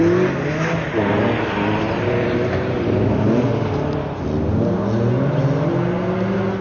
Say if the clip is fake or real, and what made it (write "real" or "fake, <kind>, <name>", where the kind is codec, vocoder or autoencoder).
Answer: real